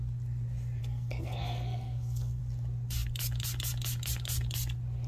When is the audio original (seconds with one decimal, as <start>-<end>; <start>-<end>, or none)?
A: 0.0-0.8; 2.4-5.1